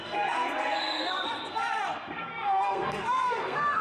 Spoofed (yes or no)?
yes